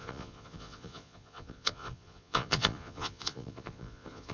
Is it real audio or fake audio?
fake